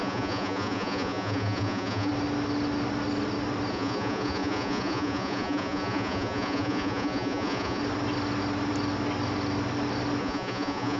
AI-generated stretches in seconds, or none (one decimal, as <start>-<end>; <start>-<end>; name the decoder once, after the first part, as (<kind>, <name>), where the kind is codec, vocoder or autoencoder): 0.0-2.1 (vocoder, Vocos); 3.7-7.8; 10.2-11.0